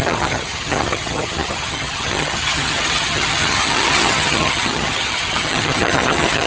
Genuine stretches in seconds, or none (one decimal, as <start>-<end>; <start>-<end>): none